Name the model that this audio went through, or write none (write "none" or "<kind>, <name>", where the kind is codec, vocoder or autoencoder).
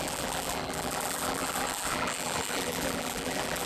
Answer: vocoder, BigVGAN v2